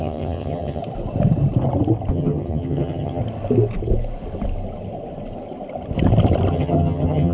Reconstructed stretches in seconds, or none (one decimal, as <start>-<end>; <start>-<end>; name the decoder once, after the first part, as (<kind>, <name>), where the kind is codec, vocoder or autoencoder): 0.0-0.8 (vocoder, HiFi-GAN); 2.1-3.2; 6.5-7.3